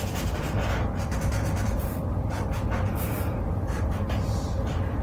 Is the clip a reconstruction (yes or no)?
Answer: yes